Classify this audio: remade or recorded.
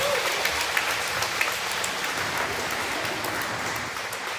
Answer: recorded